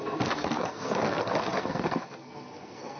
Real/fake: fake